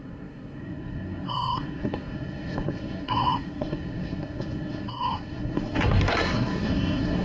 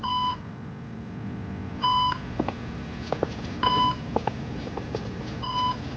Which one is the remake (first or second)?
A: first